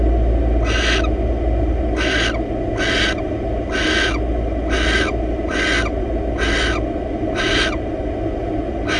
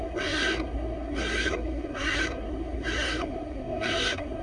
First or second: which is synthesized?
second